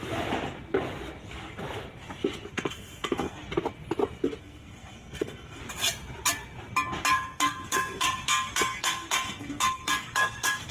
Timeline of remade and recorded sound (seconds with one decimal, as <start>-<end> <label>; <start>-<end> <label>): 0.0-2.5 recorded; 2.5-3.4 remade; 3.4-4.4 recorded; 4.4-5.6 remade; 5.6-7.1 recorded; 7.1-10.7 remade

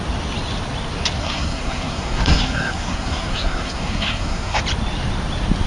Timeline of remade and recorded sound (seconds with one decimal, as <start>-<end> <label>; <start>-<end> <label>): 0.0-1.2 recorded; 1.2-4.6 remade; 4.6-5.7 recorded

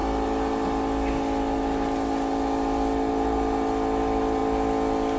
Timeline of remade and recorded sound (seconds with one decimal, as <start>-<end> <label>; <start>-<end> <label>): 0.0-5.2 recorded